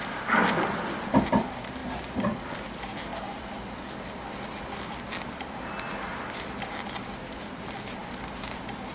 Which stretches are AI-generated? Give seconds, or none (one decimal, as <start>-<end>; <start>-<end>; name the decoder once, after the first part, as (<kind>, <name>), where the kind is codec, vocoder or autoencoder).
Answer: 0.0-1.8 (vocoder, BigVGAN v2); 2.4-8.9